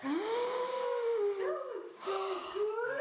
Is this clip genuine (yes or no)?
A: no